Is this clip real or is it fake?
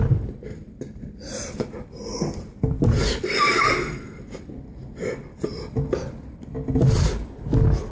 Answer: real